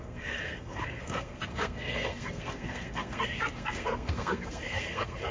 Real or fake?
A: fake